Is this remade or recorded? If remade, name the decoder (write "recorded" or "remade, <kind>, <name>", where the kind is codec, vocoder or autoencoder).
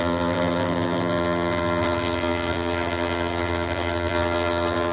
remade, vocoder, BigVGAN v2